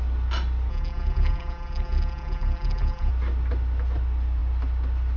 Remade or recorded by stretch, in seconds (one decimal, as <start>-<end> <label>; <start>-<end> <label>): 0.0-0.7 recorded; 0.7-3.1 remade; 3.1-5.2 recorded

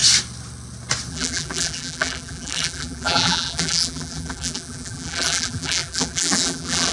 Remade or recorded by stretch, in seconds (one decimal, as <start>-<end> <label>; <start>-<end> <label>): 0.0-1.1 recorded; 1.1-6.9 remade

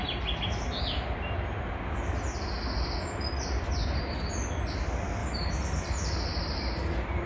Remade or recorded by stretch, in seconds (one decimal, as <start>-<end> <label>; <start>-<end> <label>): 0.0-5.2 recorded; 5.2-7.3 remade

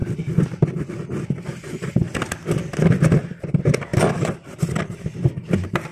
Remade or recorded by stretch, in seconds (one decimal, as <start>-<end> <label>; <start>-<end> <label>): 0.0-3.9 recorded; 3.9-5.1 remade; 5.1-5.9 recorded